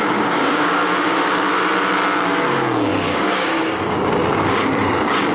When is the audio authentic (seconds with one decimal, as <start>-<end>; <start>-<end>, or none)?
0.8-2.5